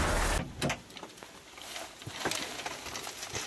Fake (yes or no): no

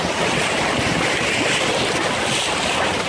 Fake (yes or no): no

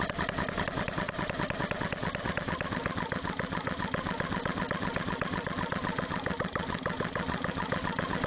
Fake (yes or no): no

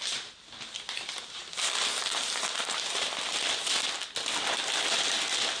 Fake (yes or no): no